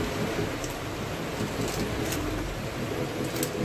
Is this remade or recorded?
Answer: recorded